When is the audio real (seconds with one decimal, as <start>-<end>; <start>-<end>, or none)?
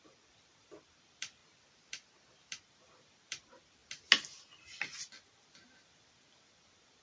1.4-2.6; 3.8-4.7